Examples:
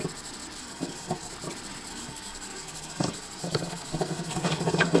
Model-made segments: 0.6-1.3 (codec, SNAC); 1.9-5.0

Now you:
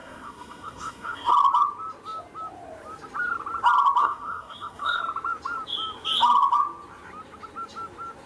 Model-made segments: 0.0-1.3 (codec, SNAC); 4.0-5.0

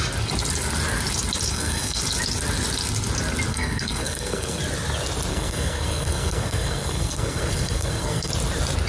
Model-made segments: 1.5-2.0 (codec, SNAC); 3.5-4.6; 5.3-8.3

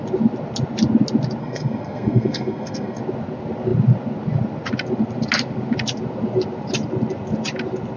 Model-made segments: 1.4-3.0 (codec, SNAC)

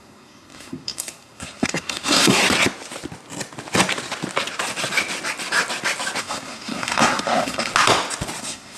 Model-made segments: 0.0-2.4 (codec, SNAC); 6.2-7.7; 8.4-8.8